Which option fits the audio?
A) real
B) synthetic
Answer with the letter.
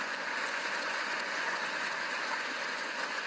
B